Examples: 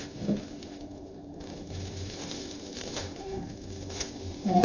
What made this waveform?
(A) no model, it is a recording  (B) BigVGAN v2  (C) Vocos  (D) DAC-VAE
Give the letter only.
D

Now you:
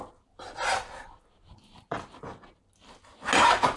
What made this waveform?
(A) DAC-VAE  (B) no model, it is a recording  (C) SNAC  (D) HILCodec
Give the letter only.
B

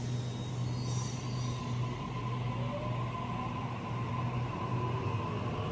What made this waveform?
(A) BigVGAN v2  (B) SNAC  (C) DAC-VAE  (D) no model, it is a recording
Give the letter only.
D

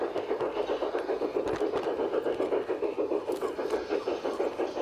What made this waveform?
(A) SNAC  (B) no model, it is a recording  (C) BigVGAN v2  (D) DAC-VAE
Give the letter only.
B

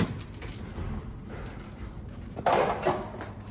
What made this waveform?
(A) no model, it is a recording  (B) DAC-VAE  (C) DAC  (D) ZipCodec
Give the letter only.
A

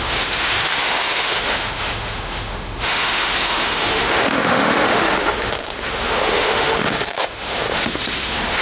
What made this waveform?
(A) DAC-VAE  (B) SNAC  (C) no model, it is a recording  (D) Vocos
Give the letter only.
A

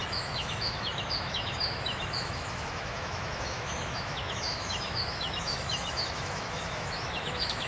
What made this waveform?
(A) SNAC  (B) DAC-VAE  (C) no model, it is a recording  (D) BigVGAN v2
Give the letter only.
B